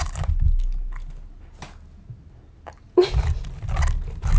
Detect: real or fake real